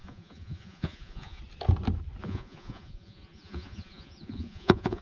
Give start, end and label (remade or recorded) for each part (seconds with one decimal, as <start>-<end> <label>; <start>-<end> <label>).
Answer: 0.0-1.4 remade; 1.4-2.2 recorded; 2.2-5.0 remade